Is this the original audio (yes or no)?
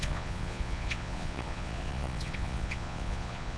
no